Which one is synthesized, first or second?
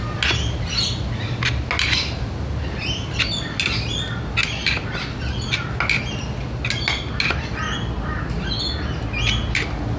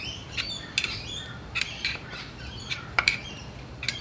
second